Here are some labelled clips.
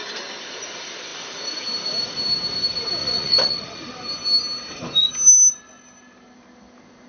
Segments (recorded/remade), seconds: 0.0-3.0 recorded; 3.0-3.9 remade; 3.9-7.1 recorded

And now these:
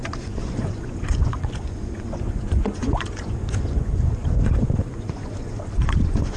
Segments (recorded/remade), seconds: 0.0-6.4 remade

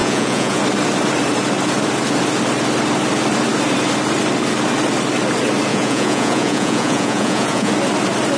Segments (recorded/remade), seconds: 0.0-0.6 remade; 0.6-5.7 recorded; 5.7-7.7 remade; 7.7-8.4 recorded

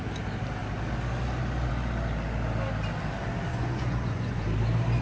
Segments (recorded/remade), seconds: 0.0-3.5 recorded; 3.5-4.4 remade; 4.4-5.0 recorded